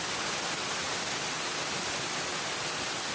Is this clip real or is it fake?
real